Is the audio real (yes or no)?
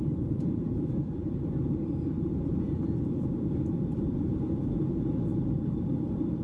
no